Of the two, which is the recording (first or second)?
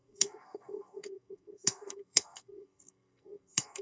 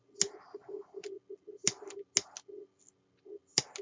second